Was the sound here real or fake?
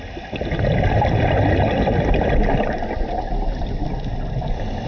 real